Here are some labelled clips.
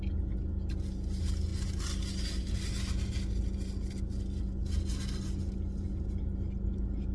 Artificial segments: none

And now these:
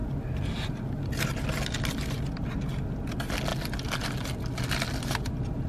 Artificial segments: none